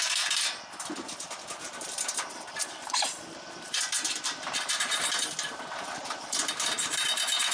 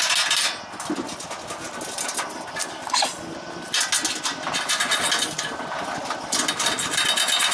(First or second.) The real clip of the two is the second